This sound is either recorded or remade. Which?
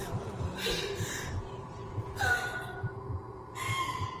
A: recorded